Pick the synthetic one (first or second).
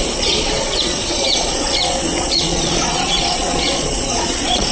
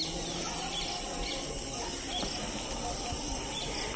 first